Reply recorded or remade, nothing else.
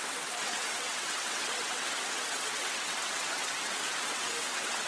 remade